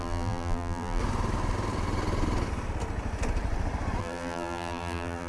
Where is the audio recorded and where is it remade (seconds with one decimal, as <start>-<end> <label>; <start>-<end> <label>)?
0.0-1.0 remade; 1.0-4.0 recorded; 4.0-5.3 remade